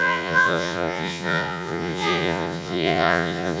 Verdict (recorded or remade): remade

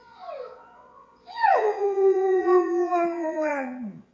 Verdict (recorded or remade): remade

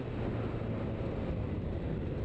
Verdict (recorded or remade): recorded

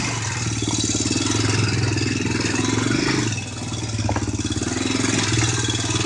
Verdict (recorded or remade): recorded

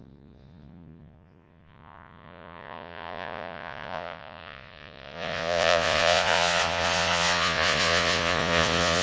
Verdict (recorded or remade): remade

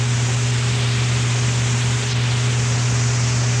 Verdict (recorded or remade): recorded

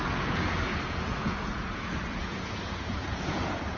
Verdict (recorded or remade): remade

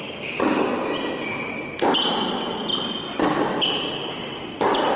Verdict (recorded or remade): recorded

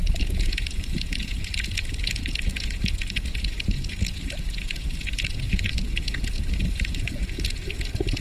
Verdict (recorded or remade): remade